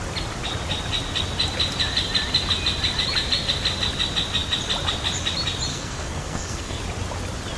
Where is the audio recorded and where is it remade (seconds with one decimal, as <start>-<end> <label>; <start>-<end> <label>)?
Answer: 0.0-5.7 recorded; 5.7-6.8 remade; 6.8-7.6 recorded